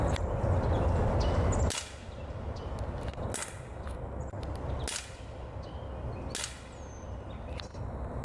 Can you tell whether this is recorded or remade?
recorded